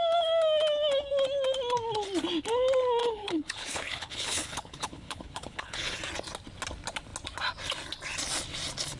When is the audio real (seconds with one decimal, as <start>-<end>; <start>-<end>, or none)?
0.0-3.0; 6.0-9.0